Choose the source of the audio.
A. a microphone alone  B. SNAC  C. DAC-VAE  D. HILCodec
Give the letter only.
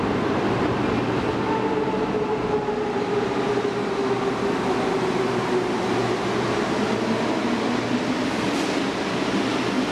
A